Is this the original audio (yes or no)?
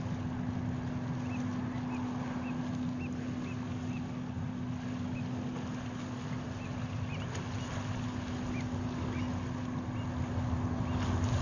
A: yes